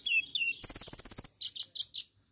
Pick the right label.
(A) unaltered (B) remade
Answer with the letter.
A